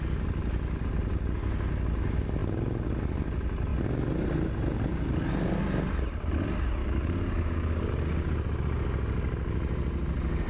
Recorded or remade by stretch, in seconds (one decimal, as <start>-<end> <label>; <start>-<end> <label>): 0.0-6.8 recorded; 6.8-7.9 remade; 7.9-10.5 recorded